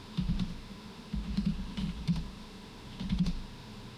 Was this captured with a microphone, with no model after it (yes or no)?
no